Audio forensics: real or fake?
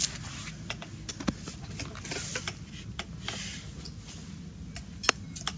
real